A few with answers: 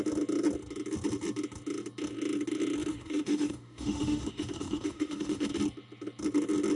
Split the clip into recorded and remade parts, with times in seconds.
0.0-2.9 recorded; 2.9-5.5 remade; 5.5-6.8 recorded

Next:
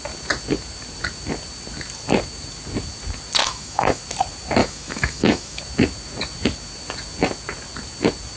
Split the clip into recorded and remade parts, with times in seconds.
0.0-3.4 recorded; 3.4-4.0 remade; 4.0-4.6 recorded; 4.6-5.6 remade; 5.6-8.4 recorded

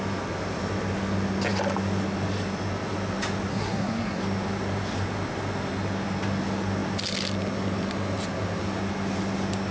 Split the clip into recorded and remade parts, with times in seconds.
0.0-3.5 recorded; 3.5-4.2 remade; 4.2-9.7 recorded

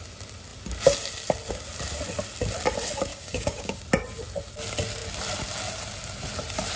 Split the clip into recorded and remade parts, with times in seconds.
0.0-3.1 recorded; 3.1-3.8 remade; 3.8-6.8 recorded